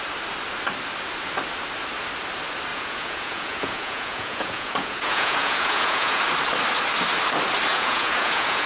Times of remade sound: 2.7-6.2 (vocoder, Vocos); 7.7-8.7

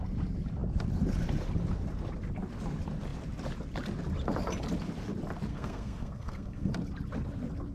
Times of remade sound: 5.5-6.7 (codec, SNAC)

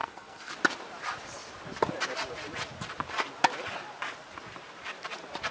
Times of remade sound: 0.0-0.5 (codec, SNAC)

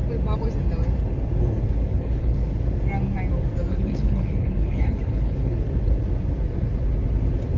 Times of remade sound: 1.9-2.5 (codec, HILCodec); 3.7-5.6

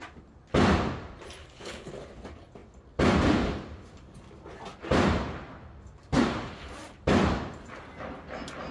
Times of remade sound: 1.4-1.9 (codec, HILCodec)